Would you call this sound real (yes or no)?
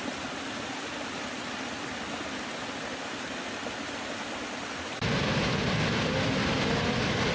yes